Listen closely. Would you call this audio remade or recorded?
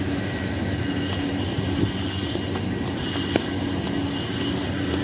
recorded